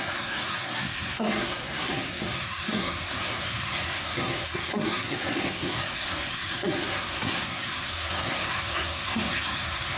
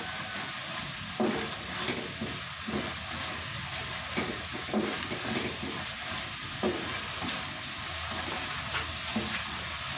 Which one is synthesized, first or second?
first